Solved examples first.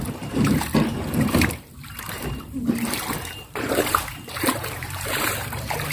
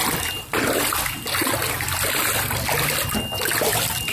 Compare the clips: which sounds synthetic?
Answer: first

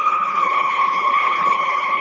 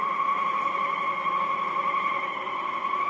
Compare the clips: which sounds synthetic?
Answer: first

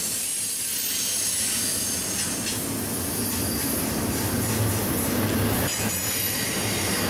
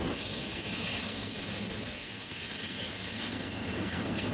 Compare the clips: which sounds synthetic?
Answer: second